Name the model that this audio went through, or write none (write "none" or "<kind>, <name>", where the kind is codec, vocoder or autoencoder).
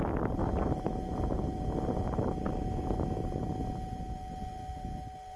none